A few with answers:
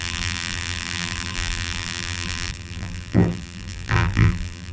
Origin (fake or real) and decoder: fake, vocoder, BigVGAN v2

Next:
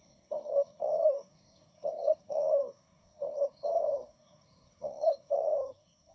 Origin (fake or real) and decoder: fake, codec, SNAC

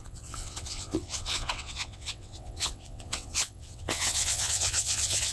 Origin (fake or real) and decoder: fake, vocoder, WaveNeXt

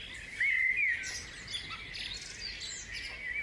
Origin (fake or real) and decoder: real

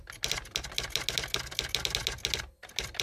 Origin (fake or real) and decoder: real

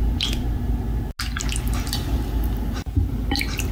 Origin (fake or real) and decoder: real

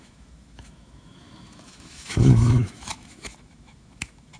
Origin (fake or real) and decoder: fake, autoencoder, DAC-VAE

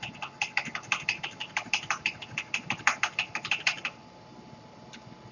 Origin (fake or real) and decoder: real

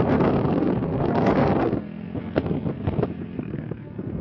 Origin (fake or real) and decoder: fake, codec, SNAC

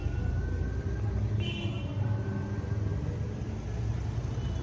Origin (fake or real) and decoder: real